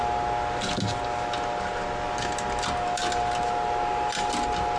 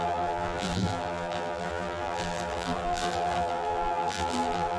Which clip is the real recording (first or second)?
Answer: first